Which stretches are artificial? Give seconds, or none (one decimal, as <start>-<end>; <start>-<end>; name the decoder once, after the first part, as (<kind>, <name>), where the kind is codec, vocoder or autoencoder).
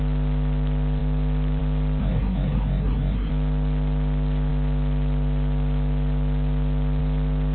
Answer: 2.0-3.3 (codec, SNAC)